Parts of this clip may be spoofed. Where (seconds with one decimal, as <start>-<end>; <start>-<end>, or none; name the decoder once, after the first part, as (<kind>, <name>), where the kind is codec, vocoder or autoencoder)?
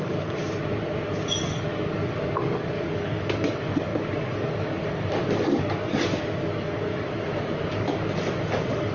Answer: 0.0-0.4 (codec, DAC); 1.4-8.9